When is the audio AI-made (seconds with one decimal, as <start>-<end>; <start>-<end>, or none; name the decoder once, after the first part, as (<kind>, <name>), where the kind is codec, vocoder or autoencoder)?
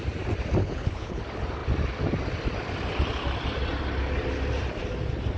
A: 0.6-1.2 (codec, HILCodec)